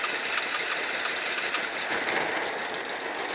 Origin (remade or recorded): recorded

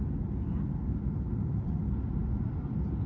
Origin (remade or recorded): recorded